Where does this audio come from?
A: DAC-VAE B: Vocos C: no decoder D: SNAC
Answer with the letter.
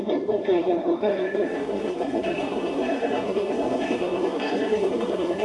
D